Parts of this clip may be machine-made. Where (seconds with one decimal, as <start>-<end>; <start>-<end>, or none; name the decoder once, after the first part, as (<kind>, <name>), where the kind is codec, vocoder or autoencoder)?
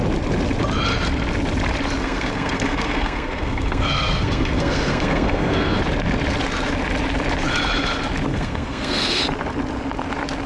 2.0-5.8 (codec, SNAC); 8.3-9.2